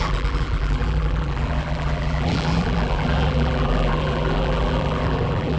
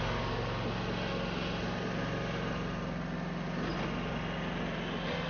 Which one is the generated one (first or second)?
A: first